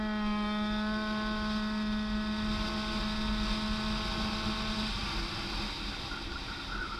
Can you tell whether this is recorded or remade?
recorded